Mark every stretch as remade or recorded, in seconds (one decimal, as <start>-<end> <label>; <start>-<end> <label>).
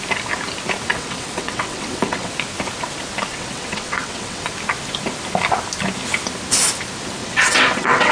0.0-0.9 recorded; 0.9-2.3 remade; 2.3-3.3 recorded; 3.3-4.5 remade; 4.5-7.2 recorded; 7.2-8.1 remade